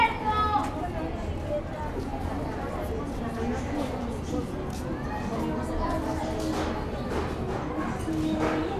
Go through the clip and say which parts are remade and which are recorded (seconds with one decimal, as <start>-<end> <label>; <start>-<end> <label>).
0.0-8.8 recorded

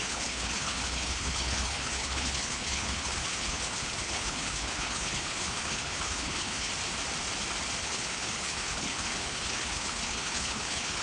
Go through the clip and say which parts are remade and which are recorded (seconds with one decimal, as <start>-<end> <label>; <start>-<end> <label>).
0.0-6.7 remade; 6.7-7.8 recorded; 7.8-11.0 remade